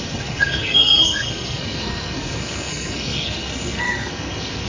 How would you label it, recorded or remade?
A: remade